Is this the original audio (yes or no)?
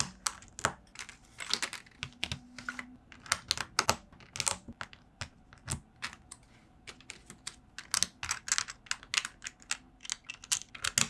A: yes